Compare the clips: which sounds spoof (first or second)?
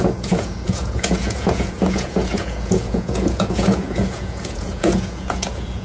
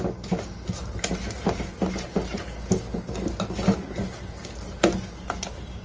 first